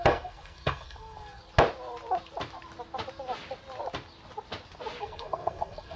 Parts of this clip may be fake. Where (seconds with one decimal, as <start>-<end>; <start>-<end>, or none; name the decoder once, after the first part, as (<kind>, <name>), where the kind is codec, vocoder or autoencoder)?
0.0-1.4 (codec, SNAC); 5.0-6.0